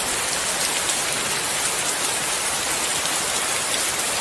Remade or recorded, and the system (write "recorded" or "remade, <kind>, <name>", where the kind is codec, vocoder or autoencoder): recorded